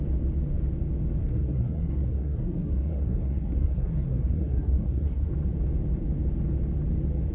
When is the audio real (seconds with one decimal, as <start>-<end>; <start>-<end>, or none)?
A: 0.0-1.2; 5.3-7.3